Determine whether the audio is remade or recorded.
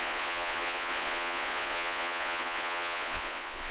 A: remade